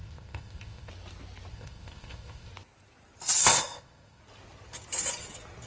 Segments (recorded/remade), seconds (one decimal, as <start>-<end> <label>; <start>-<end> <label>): 0.0-0.9 remade; 0.9-1.5 recorded; 1.5-2.5 remade; 2.5-3.4 recorded; 3.4-4.2 remade; 4.2-5.7 recorded